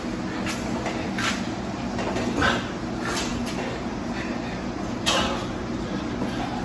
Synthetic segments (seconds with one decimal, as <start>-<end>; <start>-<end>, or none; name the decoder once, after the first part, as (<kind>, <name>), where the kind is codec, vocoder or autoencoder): none